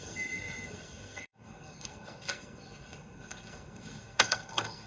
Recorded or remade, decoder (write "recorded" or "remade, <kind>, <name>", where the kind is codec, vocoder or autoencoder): remade, codec, SNAC